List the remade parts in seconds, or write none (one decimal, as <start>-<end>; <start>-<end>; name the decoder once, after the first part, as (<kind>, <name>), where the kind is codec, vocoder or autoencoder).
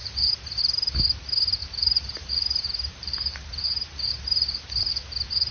0.0-0.6 (vocoder, BigVGAN v2); 1.6-4.9